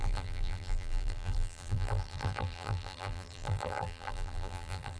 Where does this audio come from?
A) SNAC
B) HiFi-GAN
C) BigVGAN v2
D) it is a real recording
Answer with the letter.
C